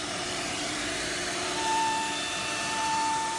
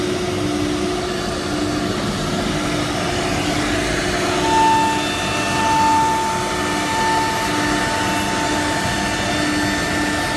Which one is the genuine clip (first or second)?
second